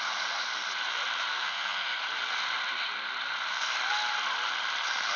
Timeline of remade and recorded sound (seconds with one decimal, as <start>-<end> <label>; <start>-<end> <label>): 0.0-1.3 recorded; 1.3-2.0 remade; 2.0-5.2 recorded